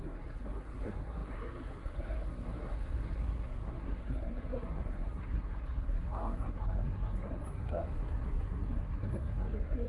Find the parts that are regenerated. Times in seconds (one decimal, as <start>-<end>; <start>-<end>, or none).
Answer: 0.0-9.9